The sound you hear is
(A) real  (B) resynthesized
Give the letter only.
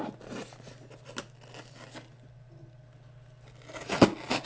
A